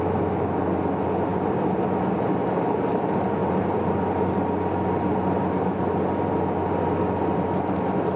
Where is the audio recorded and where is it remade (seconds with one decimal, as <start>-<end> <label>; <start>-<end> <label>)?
0.0-8.2 recorded